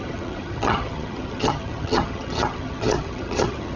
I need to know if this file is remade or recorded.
remade